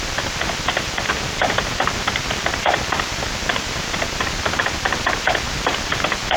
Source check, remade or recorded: recorded